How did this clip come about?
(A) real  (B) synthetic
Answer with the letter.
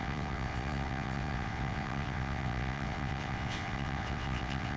B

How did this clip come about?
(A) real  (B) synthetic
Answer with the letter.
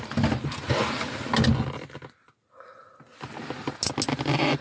A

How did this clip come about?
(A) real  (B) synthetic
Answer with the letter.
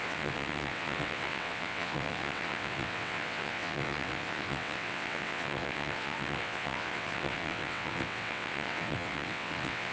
B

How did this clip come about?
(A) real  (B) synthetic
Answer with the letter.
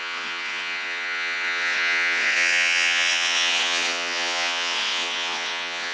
B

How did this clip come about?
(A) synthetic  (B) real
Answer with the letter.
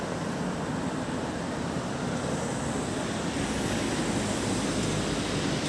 B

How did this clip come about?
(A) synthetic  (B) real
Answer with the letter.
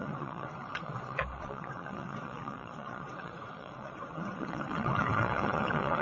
A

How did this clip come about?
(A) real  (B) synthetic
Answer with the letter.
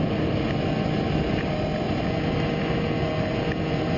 A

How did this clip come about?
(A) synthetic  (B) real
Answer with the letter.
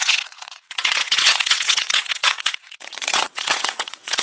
A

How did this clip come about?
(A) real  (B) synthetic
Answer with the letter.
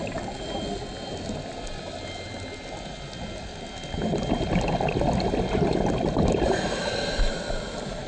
A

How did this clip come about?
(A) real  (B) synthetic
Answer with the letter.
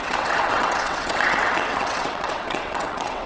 B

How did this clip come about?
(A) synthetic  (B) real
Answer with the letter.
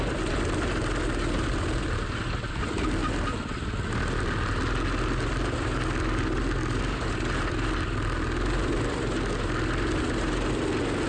B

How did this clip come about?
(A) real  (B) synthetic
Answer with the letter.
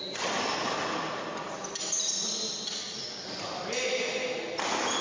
A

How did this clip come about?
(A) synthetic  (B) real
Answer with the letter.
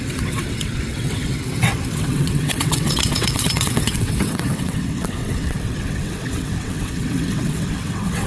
A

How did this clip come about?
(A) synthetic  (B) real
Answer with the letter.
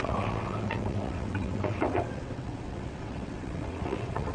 A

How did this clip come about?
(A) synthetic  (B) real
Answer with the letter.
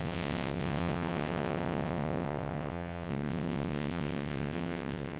A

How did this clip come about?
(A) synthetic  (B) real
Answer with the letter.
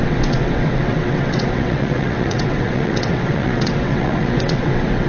A